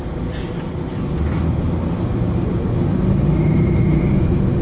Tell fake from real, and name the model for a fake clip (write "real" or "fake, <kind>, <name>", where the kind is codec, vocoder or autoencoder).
real